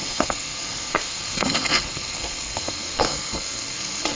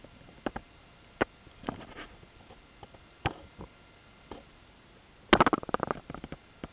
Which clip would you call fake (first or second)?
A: first